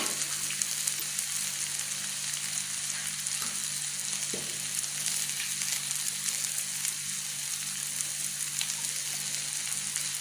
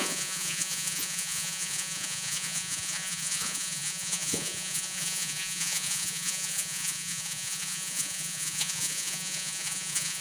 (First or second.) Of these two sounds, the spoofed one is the second